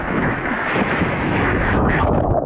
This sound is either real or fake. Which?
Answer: fake